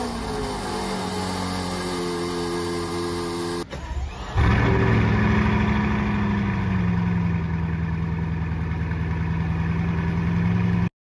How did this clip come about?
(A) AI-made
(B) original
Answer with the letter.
B